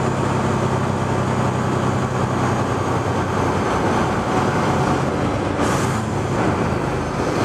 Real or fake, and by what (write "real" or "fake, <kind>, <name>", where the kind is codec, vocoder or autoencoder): real